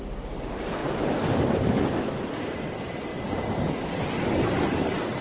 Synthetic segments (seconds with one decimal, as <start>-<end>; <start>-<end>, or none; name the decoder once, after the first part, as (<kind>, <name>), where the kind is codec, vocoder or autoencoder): none